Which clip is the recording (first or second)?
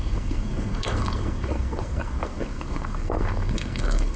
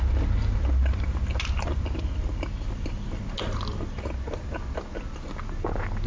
second